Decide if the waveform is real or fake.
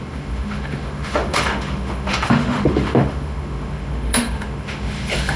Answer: fake